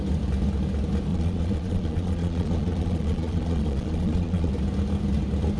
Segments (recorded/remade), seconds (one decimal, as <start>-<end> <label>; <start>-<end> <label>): 0.0-1.1 recorded; 1.1-4.5 remade; 4.5-5.6 recorded